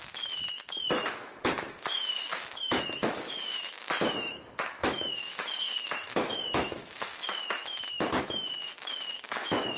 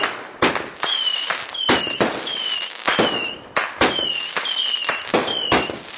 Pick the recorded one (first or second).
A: second